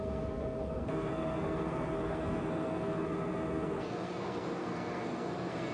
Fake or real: fake